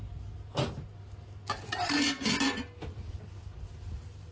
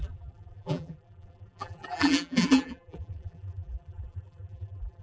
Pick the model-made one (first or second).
second